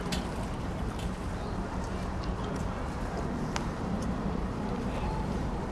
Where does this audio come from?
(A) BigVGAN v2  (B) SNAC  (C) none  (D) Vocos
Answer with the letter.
A